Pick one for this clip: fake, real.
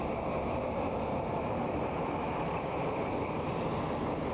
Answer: real